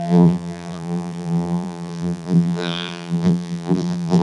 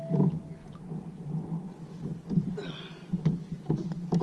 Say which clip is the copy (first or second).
first